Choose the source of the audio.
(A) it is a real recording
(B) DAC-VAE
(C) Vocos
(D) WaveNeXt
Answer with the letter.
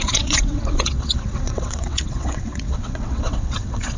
D